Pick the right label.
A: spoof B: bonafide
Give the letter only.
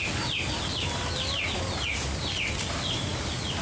B